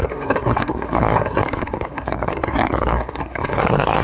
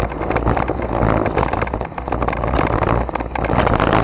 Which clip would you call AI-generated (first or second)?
first